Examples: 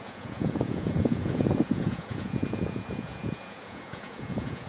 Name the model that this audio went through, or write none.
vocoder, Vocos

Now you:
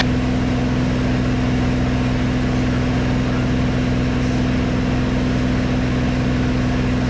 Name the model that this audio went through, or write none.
none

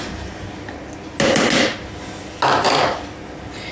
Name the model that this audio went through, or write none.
none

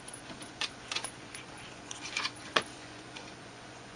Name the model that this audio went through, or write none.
vocoder, Vocos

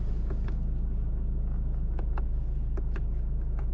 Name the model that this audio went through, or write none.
none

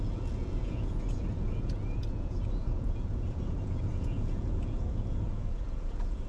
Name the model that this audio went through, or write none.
vocoder, Vocos